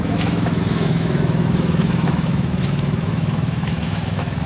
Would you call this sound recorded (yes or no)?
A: no